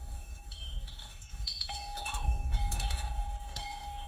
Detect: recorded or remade remade